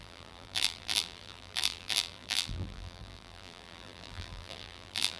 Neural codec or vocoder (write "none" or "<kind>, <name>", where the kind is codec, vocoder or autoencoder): vocoder, BigVGAN v2